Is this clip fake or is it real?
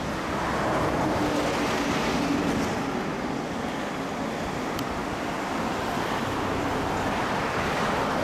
real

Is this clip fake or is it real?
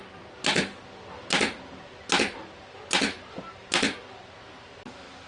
real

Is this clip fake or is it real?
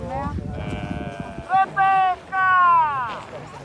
real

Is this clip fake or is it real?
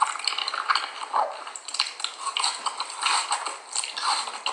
real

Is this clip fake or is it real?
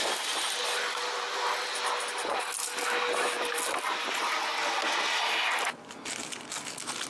real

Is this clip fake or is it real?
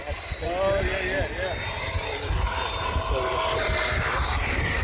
real